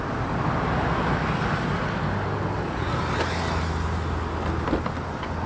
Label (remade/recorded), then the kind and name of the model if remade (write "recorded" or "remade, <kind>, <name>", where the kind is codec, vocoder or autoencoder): recorded